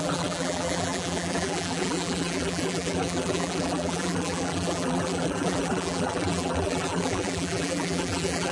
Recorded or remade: remade